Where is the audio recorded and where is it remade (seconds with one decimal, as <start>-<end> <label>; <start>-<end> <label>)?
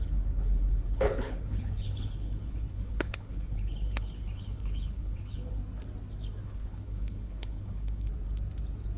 0.0-5.6 remade; 5.6-6.4 recorded; 6.4-8.1 remade; 8.1-9.0 recorded